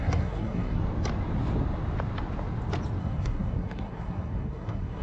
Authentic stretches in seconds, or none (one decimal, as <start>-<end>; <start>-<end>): 0.8-3.0